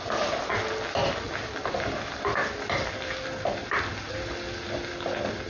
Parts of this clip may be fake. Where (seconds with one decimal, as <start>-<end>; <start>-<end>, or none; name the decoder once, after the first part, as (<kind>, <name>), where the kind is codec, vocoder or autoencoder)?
none